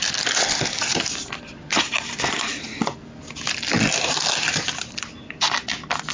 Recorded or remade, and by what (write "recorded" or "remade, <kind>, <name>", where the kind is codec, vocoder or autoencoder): recorded